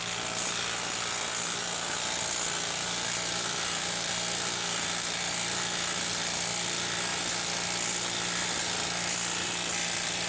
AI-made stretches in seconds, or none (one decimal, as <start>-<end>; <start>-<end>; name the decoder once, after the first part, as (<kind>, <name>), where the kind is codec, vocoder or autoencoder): none